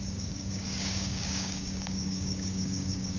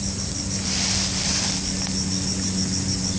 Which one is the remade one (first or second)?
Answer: first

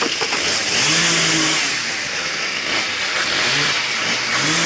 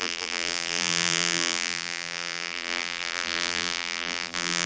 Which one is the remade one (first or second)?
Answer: second